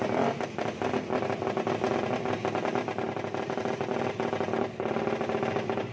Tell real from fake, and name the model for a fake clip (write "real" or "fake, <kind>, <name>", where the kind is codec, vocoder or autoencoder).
real